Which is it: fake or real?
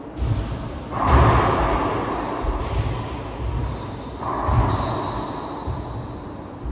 real